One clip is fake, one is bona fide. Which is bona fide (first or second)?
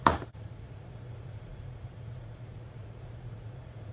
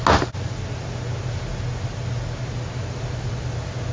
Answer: second